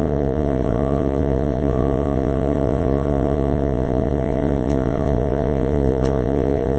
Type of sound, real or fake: fake